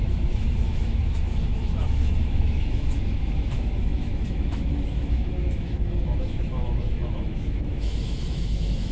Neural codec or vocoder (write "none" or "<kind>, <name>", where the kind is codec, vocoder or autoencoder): autoencoder, DAC-VAE